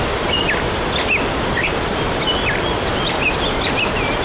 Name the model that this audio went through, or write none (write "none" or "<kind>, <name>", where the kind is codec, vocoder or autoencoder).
none